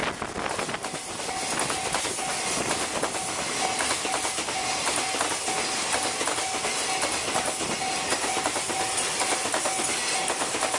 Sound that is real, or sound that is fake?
real